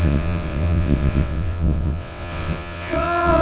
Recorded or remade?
remade